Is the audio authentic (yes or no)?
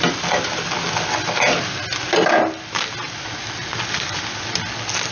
yes